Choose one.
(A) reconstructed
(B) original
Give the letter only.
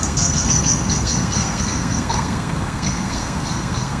A